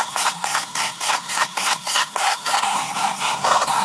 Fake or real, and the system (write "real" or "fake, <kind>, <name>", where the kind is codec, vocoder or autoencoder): fake, codec, SNAC